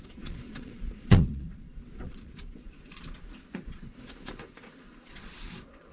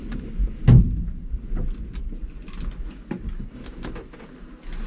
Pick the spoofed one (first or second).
first